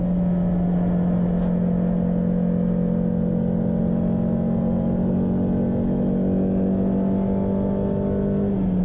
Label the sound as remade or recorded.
recorded